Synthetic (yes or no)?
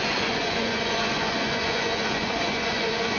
yes